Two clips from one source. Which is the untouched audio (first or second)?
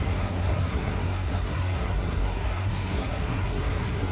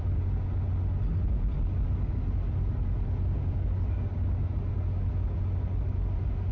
second